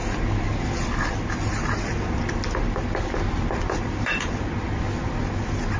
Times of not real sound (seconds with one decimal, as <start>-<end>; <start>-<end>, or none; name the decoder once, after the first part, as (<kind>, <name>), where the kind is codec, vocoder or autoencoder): none

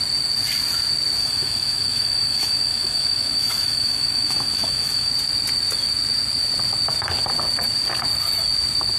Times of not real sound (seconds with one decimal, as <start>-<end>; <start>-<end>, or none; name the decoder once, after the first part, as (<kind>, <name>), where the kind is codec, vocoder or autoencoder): 1.2-5.1 (autoencoder, DAC-VAE)

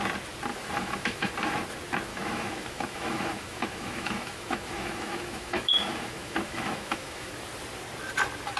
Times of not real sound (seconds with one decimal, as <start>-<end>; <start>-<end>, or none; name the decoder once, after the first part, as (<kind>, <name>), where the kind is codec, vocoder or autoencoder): 0.5-1.3 (autoencoder, DAC-VAE); 2.1-7.3

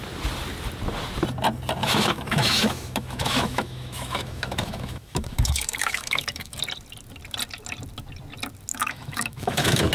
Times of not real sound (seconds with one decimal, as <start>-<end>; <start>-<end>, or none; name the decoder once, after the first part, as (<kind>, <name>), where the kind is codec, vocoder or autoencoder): 1.8-6.6 (autoencoder, DAC-VAE); 8.7-9.9

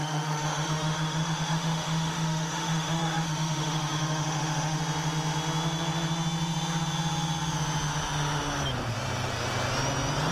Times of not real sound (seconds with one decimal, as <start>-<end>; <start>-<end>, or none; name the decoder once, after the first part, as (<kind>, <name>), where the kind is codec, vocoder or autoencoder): 0.0-4.8 (autoencoder, DAC-VAE)